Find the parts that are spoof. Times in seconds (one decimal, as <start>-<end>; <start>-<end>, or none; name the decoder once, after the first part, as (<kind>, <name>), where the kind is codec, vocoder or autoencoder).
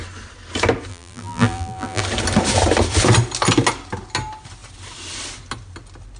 0.9-2.0 (vocoder, BigVGAN v2)